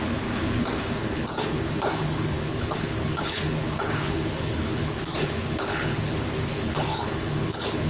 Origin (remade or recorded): remade